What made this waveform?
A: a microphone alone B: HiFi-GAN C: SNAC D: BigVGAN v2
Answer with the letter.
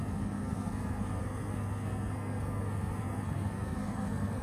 C